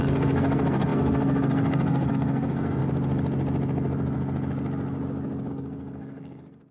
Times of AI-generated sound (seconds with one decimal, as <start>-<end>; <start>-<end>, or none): 0.0-2.8; 5.5-6.7